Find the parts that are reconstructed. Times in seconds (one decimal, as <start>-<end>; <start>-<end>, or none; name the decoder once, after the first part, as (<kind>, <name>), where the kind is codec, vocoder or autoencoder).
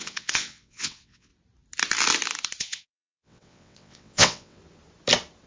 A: 0.0-1.3 (vocoder, WaveNeXt); 2.6-4.6